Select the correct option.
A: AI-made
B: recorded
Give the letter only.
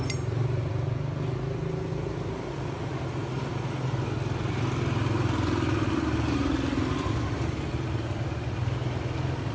B